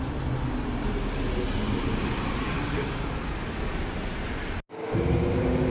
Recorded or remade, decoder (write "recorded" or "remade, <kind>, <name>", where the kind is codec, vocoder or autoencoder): recorded